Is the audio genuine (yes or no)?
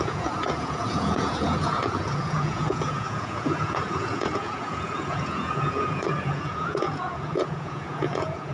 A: no